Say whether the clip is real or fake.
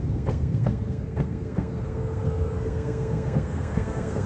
fake